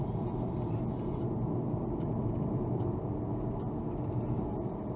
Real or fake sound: real